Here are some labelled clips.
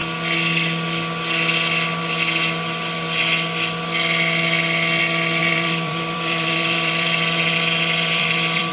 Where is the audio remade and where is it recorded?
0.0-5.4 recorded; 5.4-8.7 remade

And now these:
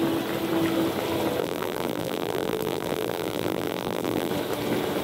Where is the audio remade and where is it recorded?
0.0-1.4 recorded; 1.4-4.3 remade; 4.3-5.0 recorded